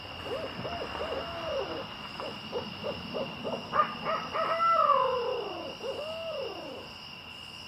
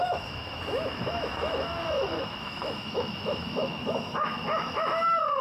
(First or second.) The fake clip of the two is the second